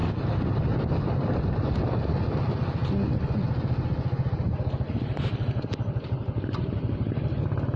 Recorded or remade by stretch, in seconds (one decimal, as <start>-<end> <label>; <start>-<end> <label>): 0.0-7.8 recorded